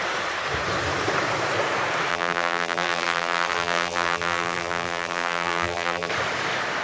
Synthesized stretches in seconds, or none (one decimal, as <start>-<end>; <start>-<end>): 2.1-6.1